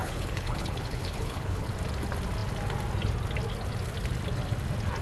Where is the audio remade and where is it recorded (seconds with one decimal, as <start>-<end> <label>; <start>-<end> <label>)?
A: 0.0-1.7 remade; 1.7-5.0 recorded